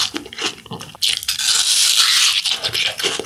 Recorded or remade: recorded